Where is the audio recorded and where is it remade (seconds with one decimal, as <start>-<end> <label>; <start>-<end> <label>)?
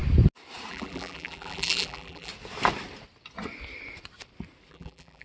0.0-0.7 recorded; 0.7-2.3 remade; 2.3-4.7 recorded; 4.7-5.2 remade